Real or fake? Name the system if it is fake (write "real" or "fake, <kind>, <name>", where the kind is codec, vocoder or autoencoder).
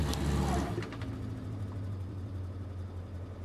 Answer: real